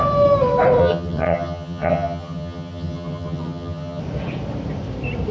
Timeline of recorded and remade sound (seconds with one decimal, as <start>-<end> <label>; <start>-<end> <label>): 0.0-0.8 recorded; 0.8-4.0 remade; 4.0-5.3 recorded

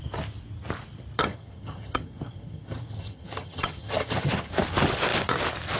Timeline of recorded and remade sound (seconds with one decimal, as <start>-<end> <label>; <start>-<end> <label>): 0.0-1.2 recorded; 1.2-4.5 remade; 4.5-5.8 recorded

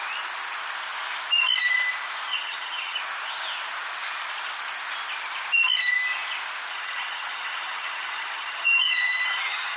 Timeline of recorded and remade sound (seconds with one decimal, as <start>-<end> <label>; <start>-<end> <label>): 0.0-2.3 recorded; 2.3-3.0 remade; 3.0-6.7 recorded; 6.7-9.8 remade

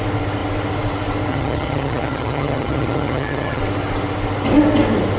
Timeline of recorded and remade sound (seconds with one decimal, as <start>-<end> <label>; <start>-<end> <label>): 0.0-1.3 recorded; 1.3-3.6 remade; 3.6-5.2 recorded